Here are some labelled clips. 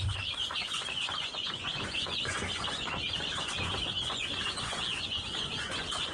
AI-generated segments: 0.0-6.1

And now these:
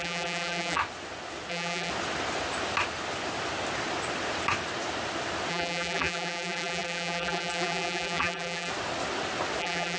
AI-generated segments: 0.0-0.8; 1.5-1.9; 5.5-8.7; 9.6-10.0

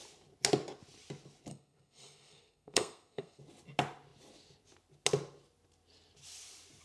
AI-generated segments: 1.5-3.4

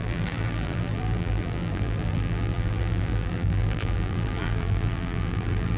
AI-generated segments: 0.0-5.8

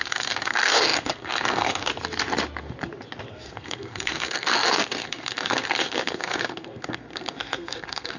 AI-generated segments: 0.0-1.9; 3.3-8.2